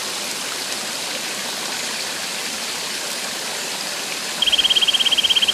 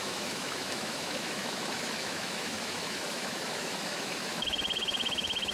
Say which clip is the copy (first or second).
second